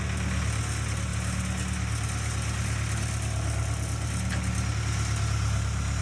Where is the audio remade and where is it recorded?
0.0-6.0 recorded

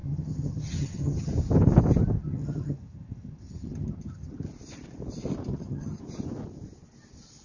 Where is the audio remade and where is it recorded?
0.0-1.3 remade; 1.3-2.2 recorded; 2.2-4.3 remade; 4.3-5.5 recorded; 5.5-6.0 remade; 6.0-7.4 recorded

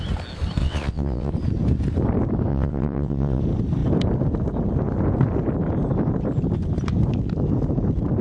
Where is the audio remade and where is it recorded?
0.0-0.6 recorded; 0.6-1.3 remade; 1.3-2.5 recorded; 2.5-3.4 remade; 3.4-8.2 recorded

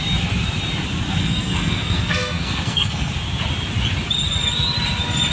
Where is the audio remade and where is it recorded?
0.0-1.2 recorded; 1.2-3.1 remade; 3.1-5.3 recorded

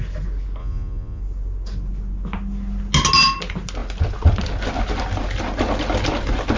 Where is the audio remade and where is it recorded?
0.0-0.6 recorded; 0.6-1.2 remade; 1.2-6.6 recorded